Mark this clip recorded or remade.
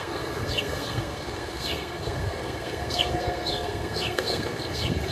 remade